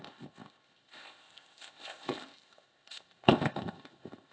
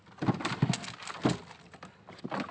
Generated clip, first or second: first